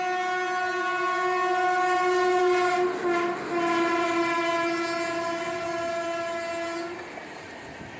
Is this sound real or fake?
real